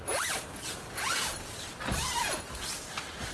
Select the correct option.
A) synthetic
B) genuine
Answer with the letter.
B